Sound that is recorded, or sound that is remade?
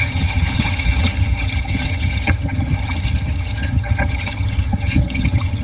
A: remade